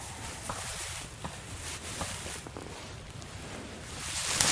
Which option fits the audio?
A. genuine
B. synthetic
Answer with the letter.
A